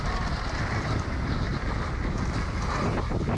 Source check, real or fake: real